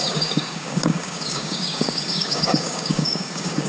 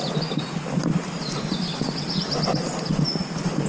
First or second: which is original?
second